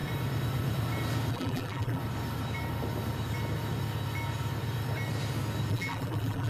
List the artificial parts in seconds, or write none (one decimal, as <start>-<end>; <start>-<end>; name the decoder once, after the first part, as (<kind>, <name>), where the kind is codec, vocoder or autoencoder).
1.3-2.0 (vocoder, BigVGAN v2); 5.7-6.5